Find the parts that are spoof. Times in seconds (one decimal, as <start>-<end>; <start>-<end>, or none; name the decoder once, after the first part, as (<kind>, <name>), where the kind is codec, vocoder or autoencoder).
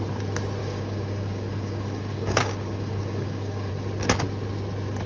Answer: 0.6-3.7 (codec, DAC)